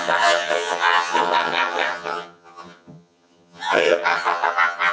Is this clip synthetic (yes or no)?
yes